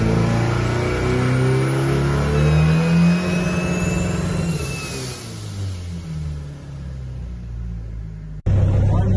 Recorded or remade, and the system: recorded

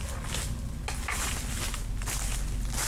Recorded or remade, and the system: recorded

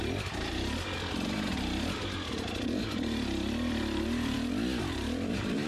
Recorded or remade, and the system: remade, vocoder, BigVGAN v2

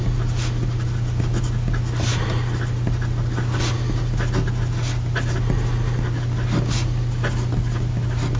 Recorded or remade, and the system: recorded